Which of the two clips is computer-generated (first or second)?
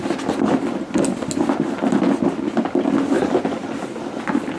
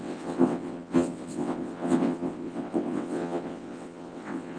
second